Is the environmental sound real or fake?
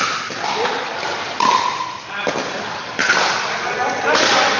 real